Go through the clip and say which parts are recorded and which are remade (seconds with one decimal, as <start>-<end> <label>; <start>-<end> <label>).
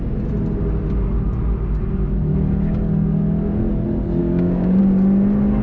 0.0-4.2 recorded; 4.2-4.8 remade; 4.8-5.6 recorded